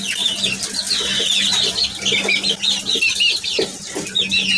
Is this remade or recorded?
recorded